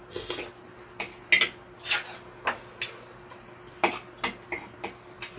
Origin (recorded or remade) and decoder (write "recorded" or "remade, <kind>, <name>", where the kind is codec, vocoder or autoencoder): recorded